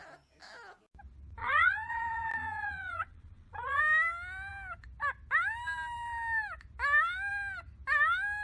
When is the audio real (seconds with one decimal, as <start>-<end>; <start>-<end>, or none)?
0.0-1.4; 3.8-8.4